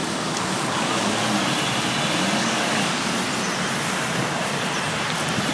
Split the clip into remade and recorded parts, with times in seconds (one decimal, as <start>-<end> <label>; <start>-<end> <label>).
0.0-1.2 remade; 1.2-2.4 recorded; 2.4-3.1 remade; 3.1-5.5 recorded